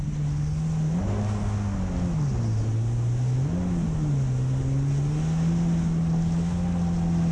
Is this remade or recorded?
recorded